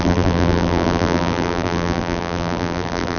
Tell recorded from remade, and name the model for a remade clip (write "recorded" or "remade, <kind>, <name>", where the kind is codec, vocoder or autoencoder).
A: remade, vocoder, BigVGAN v2